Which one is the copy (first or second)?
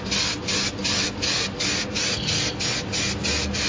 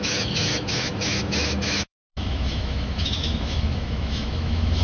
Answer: second